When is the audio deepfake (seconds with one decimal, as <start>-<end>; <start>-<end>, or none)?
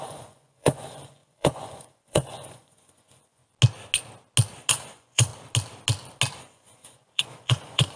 0.0-3.4; 4.7-5.3; 6.4-8.0